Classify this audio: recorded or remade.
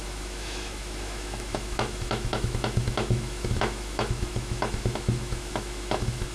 remade